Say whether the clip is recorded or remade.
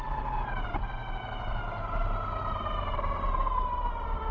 recorded